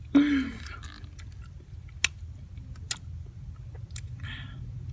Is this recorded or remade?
recorded